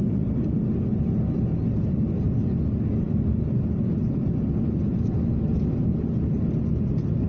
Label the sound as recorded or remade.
recorded